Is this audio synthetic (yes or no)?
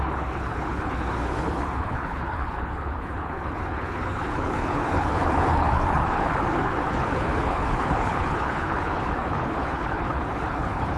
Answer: yes